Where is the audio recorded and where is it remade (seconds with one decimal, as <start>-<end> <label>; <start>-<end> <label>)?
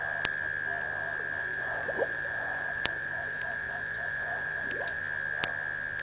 0.0-1.4 recorded; 1.4-5.0 remade; 5.0-6.0 recorded